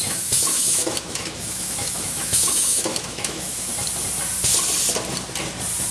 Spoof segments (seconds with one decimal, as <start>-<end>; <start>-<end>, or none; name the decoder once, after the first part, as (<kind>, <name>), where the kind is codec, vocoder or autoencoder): 0.0-3.7 (autoencoder, DAC-VAE)